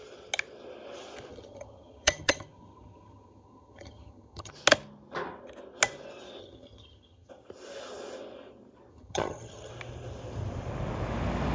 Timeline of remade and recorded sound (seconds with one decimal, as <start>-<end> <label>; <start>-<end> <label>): 0.0-1.3 recorded; 1.3-4.5 remade; 4.5-6.4 recorded; 6.4-7.3 remade; 7.3-8.9 recorded; 8.9-9.7 remade; 9.7-11.5 recorded

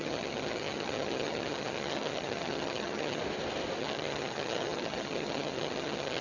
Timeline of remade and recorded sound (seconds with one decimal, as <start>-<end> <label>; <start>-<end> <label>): 0.0-3.2 remade; 3.2-3.8 recorded; 3.8-6.2 remade

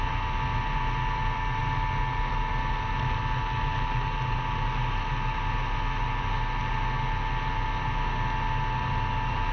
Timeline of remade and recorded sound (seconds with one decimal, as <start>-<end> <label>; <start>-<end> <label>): 0.0-9.5 recorded

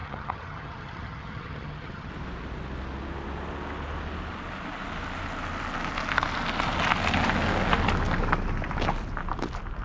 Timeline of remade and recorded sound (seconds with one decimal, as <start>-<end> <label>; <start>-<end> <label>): 0.0-2.1 remade; 2.1-9.8 recorded

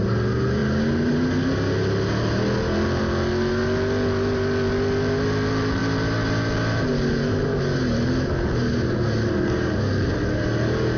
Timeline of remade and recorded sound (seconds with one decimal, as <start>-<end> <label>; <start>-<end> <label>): 0.0-11.0 recorded